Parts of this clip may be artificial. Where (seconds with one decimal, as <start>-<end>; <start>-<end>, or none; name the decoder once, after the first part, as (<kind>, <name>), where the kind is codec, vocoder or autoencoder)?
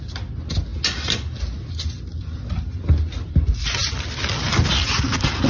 none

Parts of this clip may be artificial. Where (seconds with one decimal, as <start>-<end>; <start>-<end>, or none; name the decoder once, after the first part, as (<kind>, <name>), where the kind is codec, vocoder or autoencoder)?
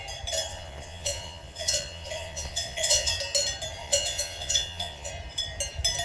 0.5-3.1 (vocoder, Vocos); 3.8-5.1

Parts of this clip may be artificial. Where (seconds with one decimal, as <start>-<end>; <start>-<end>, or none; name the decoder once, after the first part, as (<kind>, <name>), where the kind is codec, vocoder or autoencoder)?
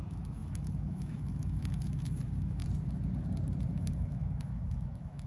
0.0-2.6 (autoencoder, DAC-VAE); 3.7-5.3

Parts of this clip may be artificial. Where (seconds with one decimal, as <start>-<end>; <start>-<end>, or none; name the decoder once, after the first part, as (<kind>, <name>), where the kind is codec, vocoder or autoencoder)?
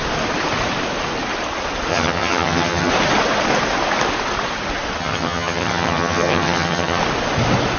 1.9-2.9 (vocoder, HiFi-GAN); 5.0-7.0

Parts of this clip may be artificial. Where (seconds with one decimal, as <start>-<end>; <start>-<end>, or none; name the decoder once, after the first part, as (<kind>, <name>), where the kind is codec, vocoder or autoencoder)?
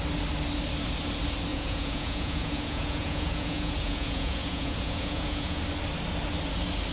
1.5-5.6 (vocoder, Vocos)